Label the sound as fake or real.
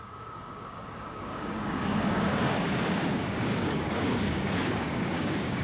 fake